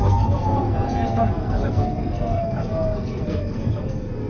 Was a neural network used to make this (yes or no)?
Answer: yes